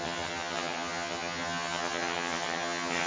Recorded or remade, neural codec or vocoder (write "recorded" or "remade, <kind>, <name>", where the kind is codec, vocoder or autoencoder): remade, vocoder, HiFi-GAN